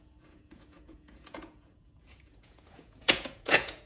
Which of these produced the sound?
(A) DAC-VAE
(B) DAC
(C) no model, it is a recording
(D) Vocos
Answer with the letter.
D